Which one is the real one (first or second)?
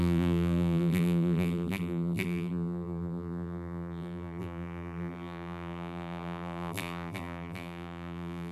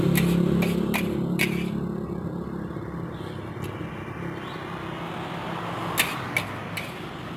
second